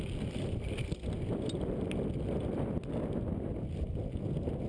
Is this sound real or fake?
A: real